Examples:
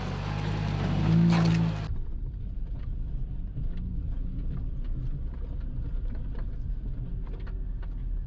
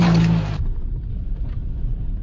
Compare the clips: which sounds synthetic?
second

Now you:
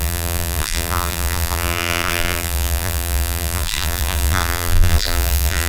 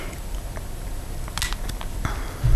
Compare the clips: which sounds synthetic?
first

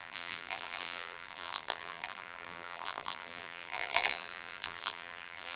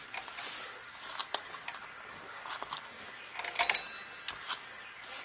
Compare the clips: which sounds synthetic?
first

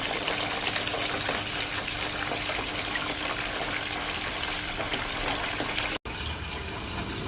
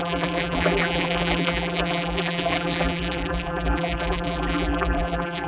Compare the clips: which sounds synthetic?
second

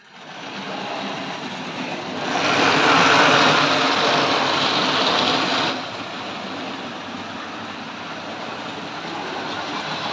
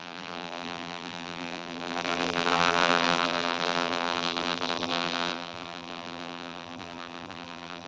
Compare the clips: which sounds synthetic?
second